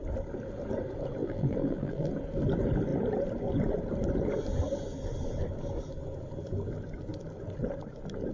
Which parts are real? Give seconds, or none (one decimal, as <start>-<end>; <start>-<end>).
0.0-1.2; 2.1-8.3